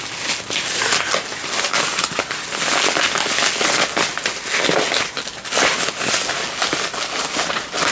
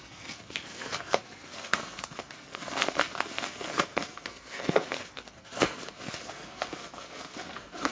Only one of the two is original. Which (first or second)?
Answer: first